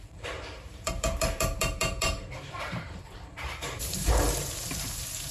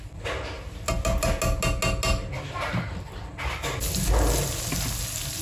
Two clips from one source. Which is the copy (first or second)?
first